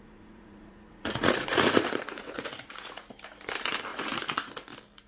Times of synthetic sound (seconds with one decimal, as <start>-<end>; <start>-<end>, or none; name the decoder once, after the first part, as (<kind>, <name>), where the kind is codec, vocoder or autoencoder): 0.0-3.1 (vocoder, Vocos); 3.9-4.5